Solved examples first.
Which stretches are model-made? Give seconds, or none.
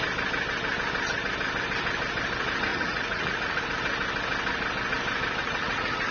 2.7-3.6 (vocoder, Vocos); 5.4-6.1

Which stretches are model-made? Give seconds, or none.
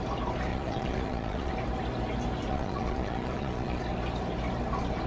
0.5-1.5 (vocoder, Vocos); 2.5-3.8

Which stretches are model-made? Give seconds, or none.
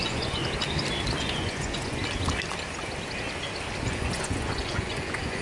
0.0-0.4 (vocoder, Vocos); 1.2-2.0; 3.8-5.4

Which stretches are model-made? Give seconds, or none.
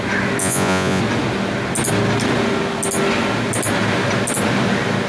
0.4-1.0 (vocoder, Vocos)